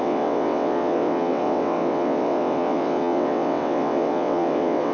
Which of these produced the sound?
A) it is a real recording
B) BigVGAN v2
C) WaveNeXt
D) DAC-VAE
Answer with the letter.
C